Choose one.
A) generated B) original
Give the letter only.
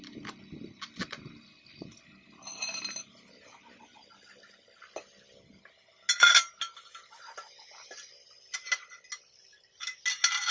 B